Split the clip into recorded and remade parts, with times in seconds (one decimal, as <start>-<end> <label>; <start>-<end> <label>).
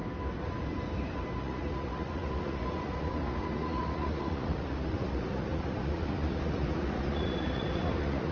0.0-1.4 recorded; 1.4-8.3 remade